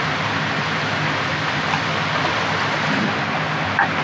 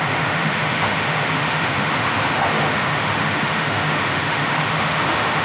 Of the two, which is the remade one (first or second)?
second